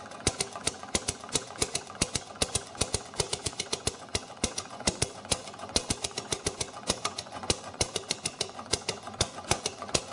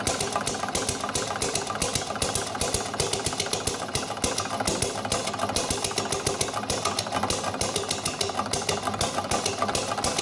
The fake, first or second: first